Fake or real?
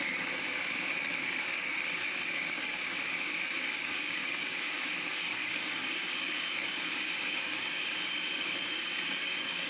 fake